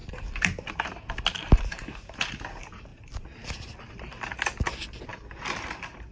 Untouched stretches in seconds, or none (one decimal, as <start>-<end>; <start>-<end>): 0.0-6.1